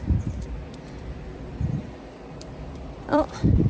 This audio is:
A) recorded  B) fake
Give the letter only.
B